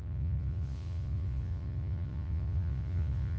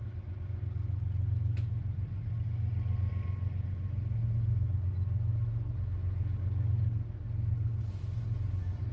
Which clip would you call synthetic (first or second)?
first